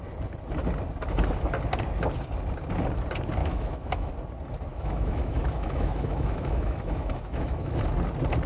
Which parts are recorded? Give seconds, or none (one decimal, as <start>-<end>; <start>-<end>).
0.0-3.4; 4.1-4.7; 7.8-8.5